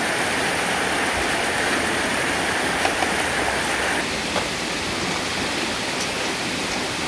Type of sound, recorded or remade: recorded